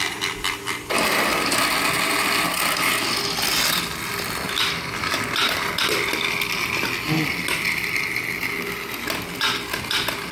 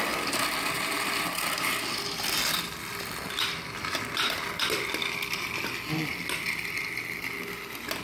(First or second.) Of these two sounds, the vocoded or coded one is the second